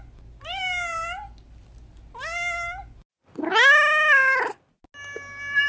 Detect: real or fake real